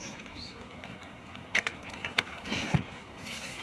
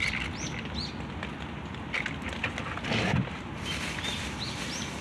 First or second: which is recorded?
second